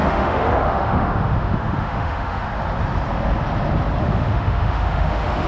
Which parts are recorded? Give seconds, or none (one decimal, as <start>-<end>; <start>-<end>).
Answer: 2.4-4.0